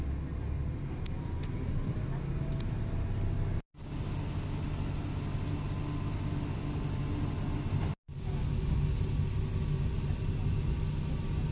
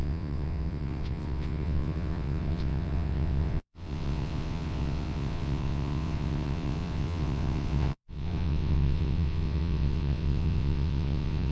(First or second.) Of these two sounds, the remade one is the second